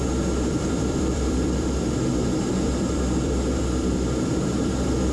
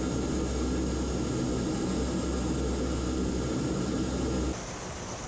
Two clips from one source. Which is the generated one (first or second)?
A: first